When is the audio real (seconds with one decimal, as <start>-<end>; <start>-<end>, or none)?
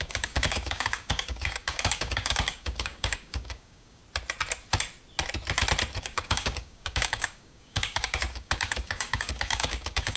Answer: 4.0-6.0